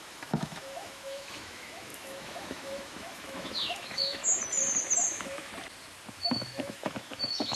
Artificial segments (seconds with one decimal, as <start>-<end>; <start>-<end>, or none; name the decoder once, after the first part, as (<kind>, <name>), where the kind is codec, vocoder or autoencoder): 0.0-4.2 (autoencoder, DAC-VAE); 5.1-5.5; 6.1-7.6